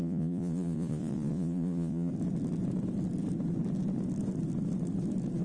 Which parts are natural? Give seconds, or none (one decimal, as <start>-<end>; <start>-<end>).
2.1-5.4